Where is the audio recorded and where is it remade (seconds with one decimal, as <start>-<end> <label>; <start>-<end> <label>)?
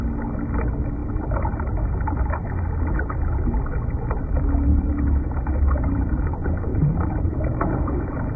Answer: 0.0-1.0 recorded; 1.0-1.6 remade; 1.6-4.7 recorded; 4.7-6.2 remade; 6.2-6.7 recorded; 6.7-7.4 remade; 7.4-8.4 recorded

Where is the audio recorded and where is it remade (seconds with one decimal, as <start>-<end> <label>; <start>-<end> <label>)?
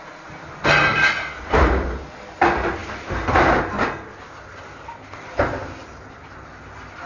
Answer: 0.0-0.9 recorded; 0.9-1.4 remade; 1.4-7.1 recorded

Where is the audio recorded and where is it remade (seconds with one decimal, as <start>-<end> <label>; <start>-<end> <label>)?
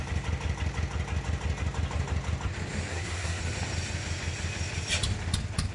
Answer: 0.0-2.9 recorded; 2.9-3.4 remade; 3.4-5.7 recorded